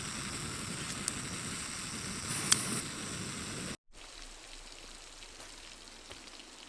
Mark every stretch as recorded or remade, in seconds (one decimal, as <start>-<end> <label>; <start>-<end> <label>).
0.0-2.3 recorded; 2.3-2.8 remade; 2.8-6.7 recorded

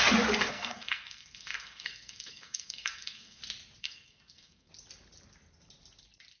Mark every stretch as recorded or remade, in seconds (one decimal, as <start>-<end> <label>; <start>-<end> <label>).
0.0-0.5 recorded; 0.5-3.4 remade; 3.4-3.8 recorded; 3.8-4.7 remade; 4.7-6.4 recorded